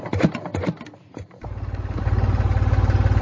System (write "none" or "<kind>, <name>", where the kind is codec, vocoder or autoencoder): none